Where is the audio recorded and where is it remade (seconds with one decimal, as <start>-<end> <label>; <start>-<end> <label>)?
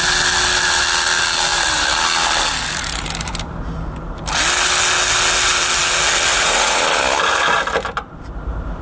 0.0-6.3 recorded; 6.3-6.8 remade; 6.8-8.8 recorded